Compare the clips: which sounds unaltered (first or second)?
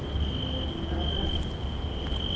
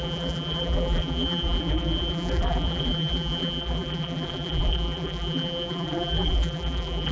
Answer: first